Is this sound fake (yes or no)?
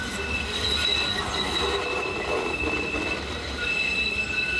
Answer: no